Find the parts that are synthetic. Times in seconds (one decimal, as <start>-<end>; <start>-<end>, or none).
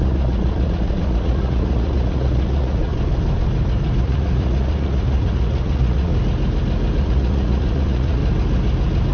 0.0-2.9; 4.0-6.1; 7.0-8.2